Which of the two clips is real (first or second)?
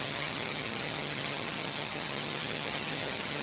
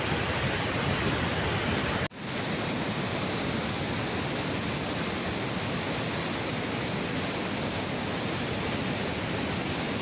second